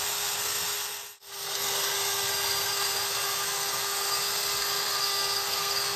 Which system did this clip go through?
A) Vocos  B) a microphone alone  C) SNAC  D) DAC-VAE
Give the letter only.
C